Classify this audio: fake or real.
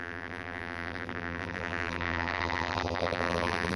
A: fake